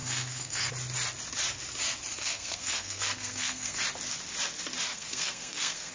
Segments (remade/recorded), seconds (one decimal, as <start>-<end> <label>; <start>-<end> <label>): 0.0-0.7 remade; 0.7-2.1 recorded; 2.1-3.8 remade; 3.8-4.9 recorded; 4.9-5.9 remade